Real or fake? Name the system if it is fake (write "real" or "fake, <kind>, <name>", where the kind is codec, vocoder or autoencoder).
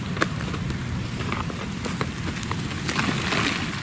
real